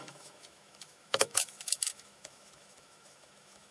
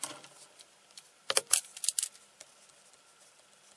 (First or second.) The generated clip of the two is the first